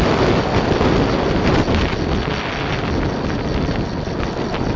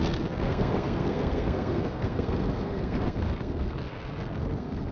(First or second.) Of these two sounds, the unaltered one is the first